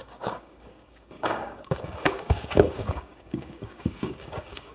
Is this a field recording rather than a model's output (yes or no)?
no